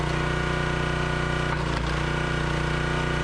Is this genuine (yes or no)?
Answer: yes